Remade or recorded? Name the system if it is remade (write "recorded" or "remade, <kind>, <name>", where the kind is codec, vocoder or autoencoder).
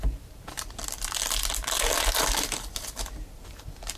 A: recorded